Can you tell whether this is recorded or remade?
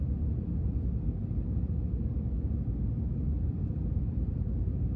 recorded